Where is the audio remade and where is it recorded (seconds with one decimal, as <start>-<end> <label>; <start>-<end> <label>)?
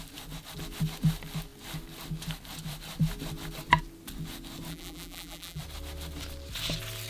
0.0-4.7 recorded; 4.7-5.6 remade; 5.6-7.1 recorded